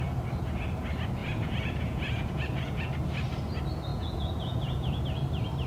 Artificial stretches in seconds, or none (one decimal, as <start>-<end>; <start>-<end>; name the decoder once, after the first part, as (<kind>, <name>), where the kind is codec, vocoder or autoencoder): 1.2-2.9 (vocoder, Vocos); 3.9-5.0